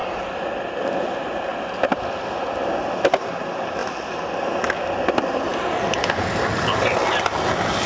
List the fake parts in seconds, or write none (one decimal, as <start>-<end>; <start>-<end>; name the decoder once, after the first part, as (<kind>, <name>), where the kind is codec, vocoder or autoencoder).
none